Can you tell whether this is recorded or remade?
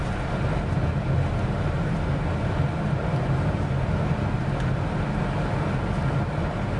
recorded